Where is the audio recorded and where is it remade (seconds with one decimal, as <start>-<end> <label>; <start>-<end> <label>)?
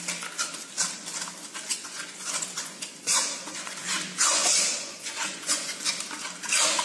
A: 0.0-1.7 recorded; 1.7-5.8 remade; 5.8-6.8 recorded